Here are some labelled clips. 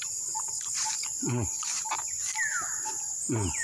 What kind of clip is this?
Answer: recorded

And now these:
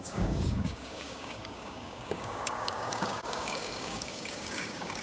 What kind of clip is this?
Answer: remade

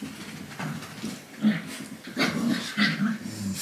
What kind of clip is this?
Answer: recorded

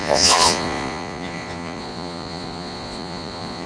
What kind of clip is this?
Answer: remade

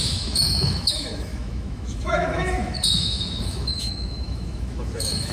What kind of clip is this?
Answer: remade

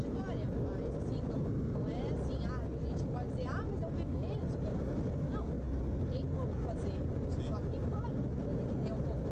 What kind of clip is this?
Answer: recorded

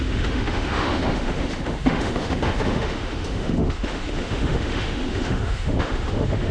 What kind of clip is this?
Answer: remade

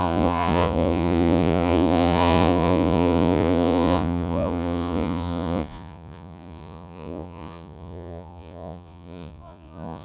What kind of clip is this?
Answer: remade